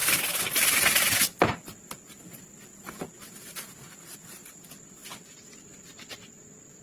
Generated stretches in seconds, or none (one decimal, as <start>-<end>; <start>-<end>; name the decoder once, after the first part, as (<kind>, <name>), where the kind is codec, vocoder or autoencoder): 5.0-6.8 (vocoder, BigVGAN v2)